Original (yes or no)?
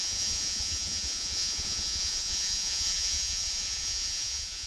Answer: no